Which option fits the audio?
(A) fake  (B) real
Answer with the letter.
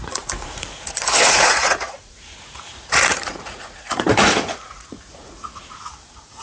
A